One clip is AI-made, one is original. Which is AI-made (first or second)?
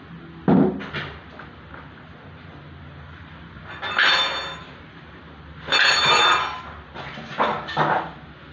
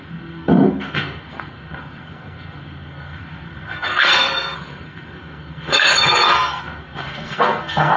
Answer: second